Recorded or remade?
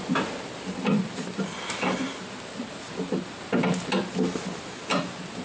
recorded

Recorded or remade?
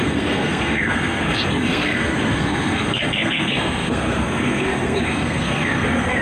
remade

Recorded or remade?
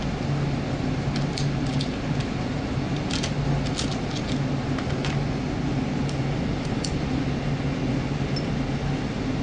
recorded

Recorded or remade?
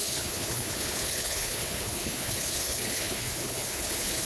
remade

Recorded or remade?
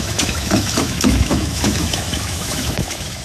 remade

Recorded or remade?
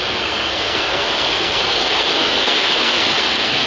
remade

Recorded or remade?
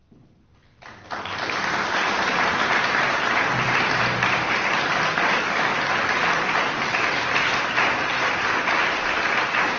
recorded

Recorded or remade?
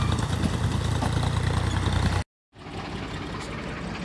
recorded